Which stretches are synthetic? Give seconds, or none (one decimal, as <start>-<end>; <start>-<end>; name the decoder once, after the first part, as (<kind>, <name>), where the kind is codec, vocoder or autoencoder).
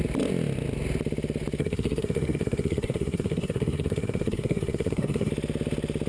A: 1.6-5.3 (codec, SNAC)